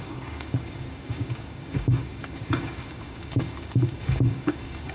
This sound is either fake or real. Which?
fake